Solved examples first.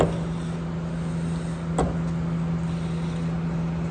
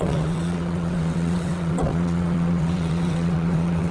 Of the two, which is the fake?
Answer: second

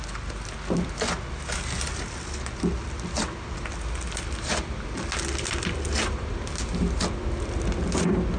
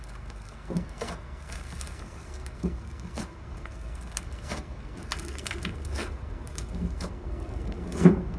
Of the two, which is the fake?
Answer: second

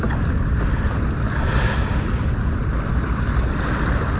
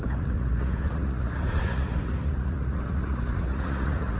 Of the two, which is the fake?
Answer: second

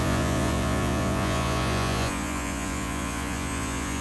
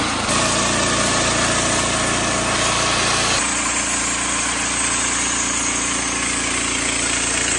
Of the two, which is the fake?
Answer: first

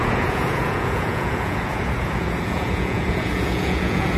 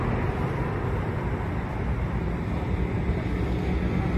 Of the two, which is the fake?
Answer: first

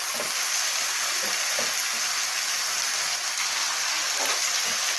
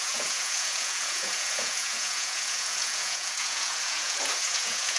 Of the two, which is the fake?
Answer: second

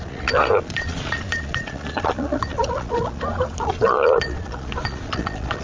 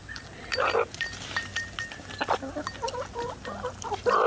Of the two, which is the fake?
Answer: first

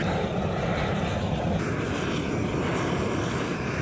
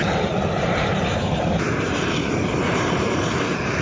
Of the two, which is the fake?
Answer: second